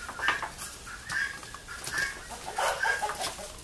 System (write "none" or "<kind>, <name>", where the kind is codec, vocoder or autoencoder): none